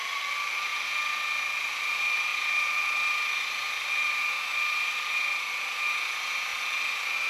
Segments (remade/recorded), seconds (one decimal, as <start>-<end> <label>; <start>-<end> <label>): 0.0-0.7 remade; 0.7-1.7 recorded; 1.7-7.3 remade